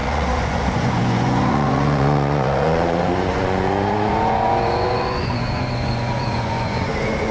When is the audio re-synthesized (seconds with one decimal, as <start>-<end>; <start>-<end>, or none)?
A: 0.0-7.3